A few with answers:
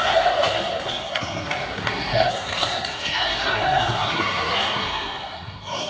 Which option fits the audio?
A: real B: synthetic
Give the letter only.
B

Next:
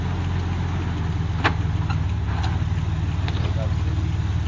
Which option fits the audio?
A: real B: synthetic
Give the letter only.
A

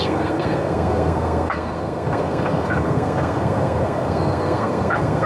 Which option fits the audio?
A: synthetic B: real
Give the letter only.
A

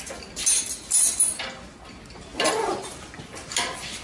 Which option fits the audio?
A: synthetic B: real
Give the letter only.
B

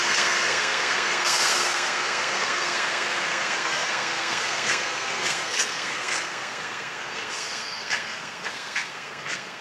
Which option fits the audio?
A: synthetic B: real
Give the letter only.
A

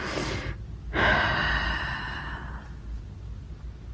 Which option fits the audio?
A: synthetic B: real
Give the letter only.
B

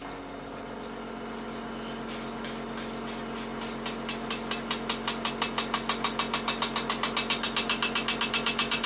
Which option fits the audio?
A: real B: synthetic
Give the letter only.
A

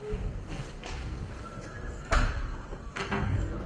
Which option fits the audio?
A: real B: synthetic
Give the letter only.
B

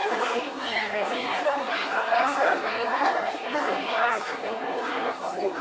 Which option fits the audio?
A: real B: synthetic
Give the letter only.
B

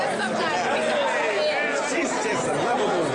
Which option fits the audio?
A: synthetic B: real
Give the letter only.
B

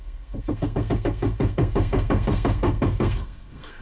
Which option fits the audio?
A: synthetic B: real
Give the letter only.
A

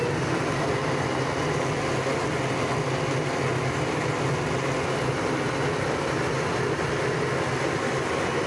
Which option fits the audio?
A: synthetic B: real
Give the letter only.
B